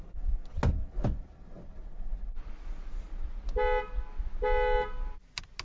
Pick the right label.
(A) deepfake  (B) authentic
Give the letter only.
B